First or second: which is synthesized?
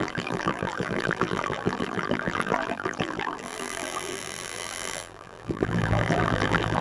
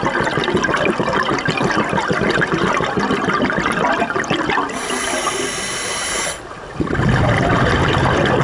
first